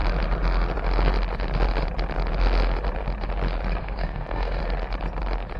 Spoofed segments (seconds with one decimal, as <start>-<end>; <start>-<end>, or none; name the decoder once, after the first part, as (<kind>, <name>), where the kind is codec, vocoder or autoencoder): 3.8-4.6 (codec, SNAC)